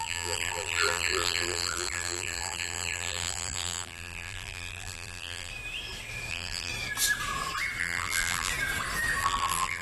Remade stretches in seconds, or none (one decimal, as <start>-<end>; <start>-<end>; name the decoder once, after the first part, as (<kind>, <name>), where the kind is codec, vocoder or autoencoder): 0.0-5.5 (vocoder, BigVGAN v2); 6.3-6.7; 7.8-8.5; 9.2-9.8